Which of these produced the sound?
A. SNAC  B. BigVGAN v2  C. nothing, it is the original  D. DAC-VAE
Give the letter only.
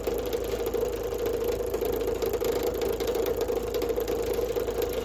C